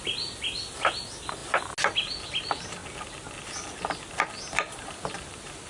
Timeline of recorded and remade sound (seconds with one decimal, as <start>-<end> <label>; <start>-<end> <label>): 0.0-5.7 recorded